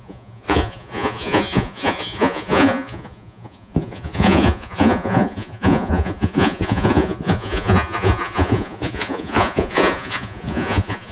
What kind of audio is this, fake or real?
fake